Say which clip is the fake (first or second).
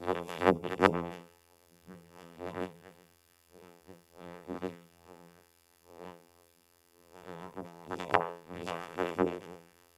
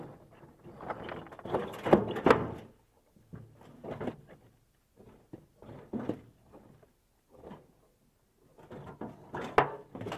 first